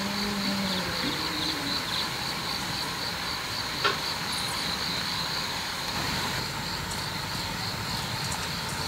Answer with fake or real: real